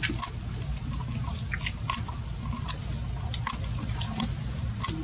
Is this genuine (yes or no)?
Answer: yes